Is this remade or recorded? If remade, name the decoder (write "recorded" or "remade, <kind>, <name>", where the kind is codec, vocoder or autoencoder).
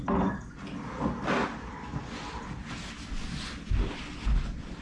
recorded